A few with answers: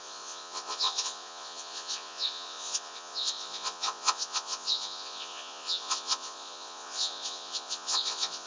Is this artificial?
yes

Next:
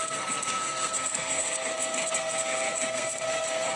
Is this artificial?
yes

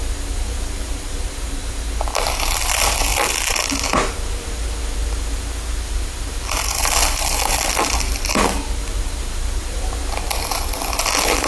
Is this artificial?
no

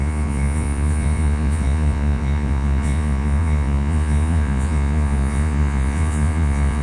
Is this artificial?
yes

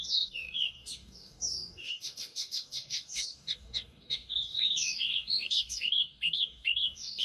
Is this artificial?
yes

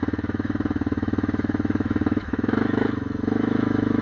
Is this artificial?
yes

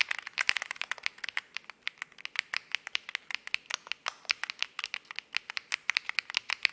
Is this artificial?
no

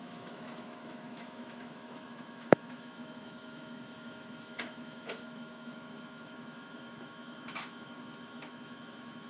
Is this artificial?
yes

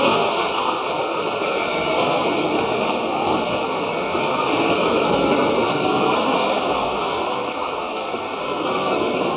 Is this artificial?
yes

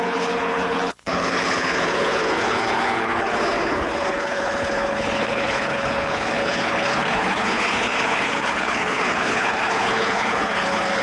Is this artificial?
yes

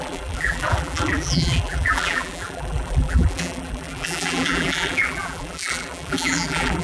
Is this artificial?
yes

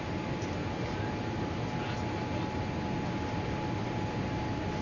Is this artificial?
no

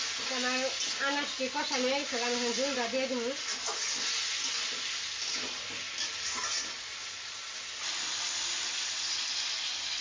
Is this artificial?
no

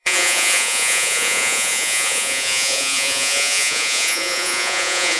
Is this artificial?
yes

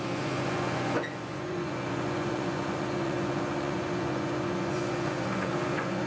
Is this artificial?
yes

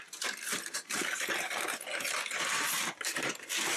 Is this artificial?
yes